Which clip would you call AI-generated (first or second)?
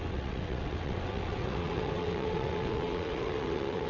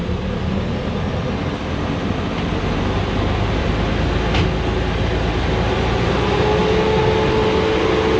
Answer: first